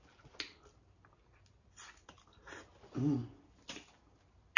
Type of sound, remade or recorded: recorded